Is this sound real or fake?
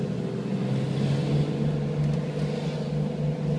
real